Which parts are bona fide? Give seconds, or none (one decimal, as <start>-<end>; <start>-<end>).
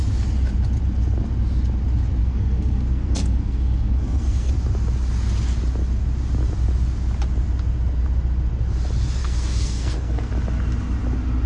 0.0-2.2; 4.5-9.2; 10.3-11.5